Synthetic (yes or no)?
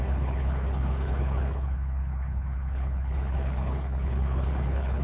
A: yes